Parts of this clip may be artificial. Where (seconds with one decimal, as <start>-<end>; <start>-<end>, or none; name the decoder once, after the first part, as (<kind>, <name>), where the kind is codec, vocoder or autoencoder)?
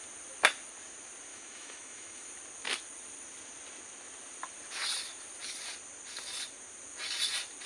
1.3-2.3 (autoencoder, DAC-VAE)